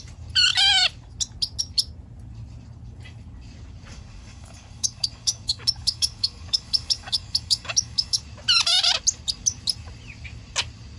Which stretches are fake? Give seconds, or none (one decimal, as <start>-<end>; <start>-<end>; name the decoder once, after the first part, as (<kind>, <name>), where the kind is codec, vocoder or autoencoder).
3.9-8.2 (codec, DAC)